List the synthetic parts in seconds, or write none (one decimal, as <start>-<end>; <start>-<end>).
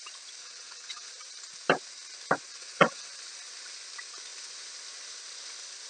0.4-1.1; 2.5-3.2